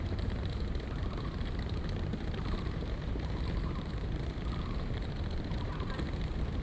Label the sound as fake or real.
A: fake